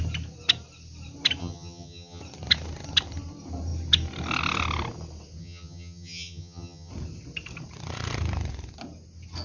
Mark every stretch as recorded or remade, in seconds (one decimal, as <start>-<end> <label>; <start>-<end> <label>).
0.0-1.4 recorded; 1.4-2.2 remade; 2.2-5.4 recorded; 5.4-6.9 remade; 6.9-9.4 recorded